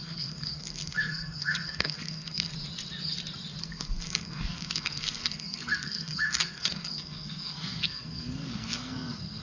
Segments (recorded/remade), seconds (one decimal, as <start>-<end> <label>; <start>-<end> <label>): 0.0-2.5 remade; 2.5-3.6 recorded; 3.6-9.4 remade